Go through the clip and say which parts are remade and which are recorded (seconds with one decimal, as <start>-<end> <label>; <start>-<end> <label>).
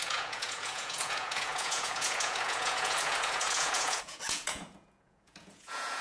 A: 0.0-6.0 remade